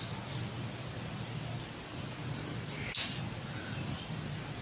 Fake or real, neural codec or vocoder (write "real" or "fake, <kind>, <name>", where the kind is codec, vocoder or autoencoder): real